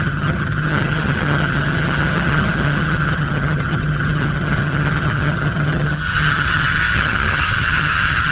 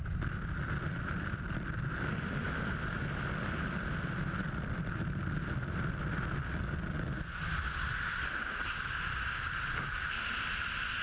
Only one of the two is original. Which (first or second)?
second